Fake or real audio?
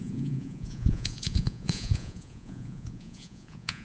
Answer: fake